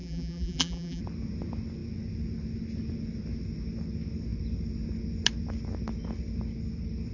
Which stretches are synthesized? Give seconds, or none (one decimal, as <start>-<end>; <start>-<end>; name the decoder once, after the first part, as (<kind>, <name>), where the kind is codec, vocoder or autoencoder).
0.0-1.0 (vocoder, BigVGAN v2)